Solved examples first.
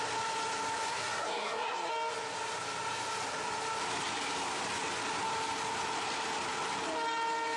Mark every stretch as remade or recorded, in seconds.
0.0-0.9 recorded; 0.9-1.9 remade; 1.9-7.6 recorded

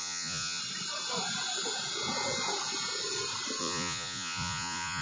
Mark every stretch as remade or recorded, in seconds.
0.0-0.6 remade; 0.6-3.6 recorded; 3.6-5.0 remade